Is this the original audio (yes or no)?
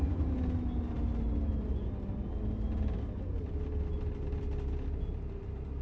yes